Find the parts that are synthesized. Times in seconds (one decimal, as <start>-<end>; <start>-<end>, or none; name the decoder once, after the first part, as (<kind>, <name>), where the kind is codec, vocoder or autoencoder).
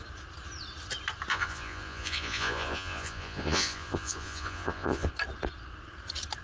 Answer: 1.3-5.1 (vocoder, Vocos)